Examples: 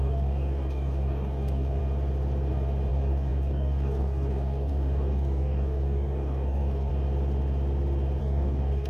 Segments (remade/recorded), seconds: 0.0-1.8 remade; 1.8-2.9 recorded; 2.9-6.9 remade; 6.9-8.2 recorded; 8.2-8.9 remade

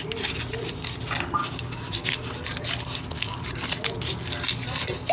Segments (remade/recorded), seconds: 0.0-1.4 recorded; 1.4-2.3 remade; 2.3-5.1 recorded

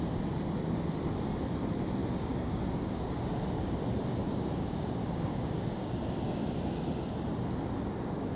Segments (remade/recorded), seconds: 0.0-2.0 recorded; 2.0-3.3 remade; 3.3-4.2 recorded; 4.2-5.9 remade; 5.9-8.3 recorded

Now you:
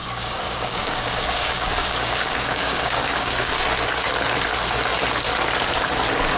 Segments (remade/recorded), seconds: 0.0-3.5 remade; 3.5-6.4 recorded

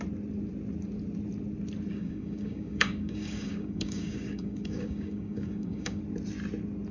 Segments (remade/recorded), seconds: 0.0-1.9 recorded; 1.9-6.0 remade; 6.0-6.9 recorded

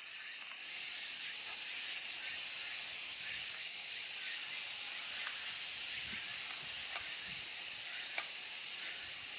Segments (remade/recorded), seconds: 0.0-3.1 recorded; 3.1-3.9 remade; 3.9-9.4 recorded